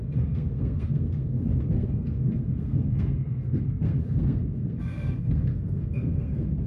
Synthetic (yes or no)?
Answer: yes